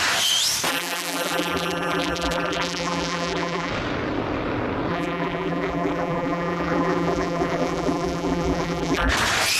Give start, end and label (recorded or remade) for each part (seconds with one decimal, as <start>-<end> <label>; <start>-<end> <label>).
0.0-0.7 recorded; 0.7-3.7 remade; 3.7-4.9 recorded; 4.9-9.1 remade; 9.1-9.6 recorded